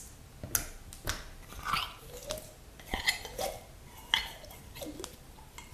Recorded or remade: recorded